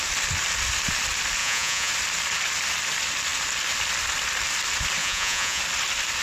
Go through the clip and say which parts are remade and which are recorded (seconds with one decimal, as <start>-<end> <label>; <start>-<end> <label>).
0.0-1.4 recorded; 1.4-1.9 remade; 1.9-5.0 recorded; 5.0-5.6 remade; 5.6-6.2 recorded